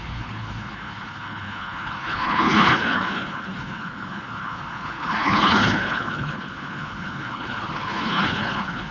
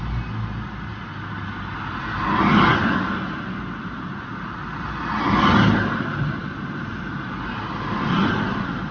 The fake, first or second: first